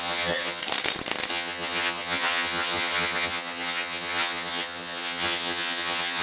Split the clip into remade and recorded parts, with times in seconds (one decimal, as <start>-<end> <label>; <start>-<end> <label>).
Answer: 0.0-0.6 remade; 0.6-1.3 recorded; 1.3-6.2 remade